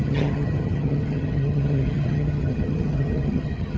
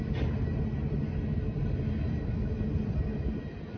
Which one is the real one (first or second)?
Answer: second